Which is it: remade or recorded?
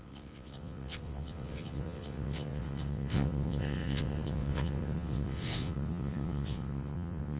remade